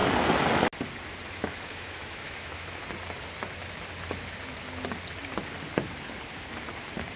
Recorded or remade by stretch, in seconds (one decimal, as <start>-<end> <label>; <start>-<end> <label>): 0.0-1.3 recorded; 1.3-2.8 remade; 2.8-7.2 recorded